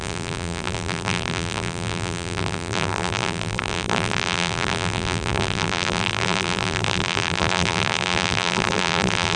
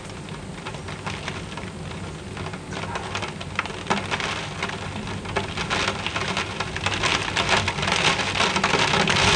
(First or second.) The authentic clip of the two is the second